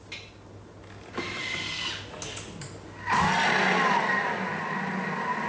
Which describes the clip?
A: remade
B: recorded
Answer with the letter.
B